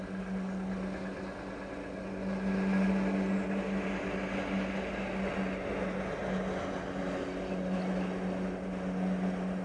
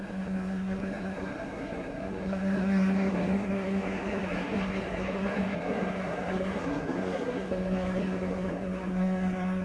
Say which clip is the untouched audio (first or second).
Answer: first